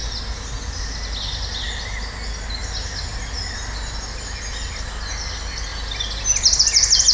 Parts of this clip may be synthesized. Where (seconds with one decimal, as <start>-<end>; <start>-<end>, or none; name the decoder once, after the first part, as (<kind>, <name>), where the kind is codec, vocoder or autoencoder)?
none